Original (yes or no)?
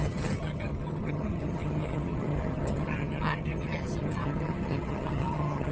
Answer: no